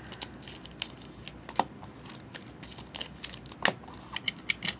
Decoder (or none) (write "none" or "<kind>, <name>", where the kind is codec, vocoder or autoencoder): none